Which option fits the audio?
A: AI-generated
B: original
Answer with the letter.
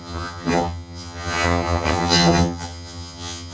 A